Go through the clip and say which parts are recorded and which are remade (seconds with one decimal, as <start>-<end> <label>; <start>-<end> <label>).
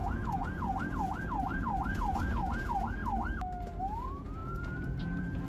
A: 0.0-3.0 remade; 3.0-3.8 recorded; 3.8-5.5 remade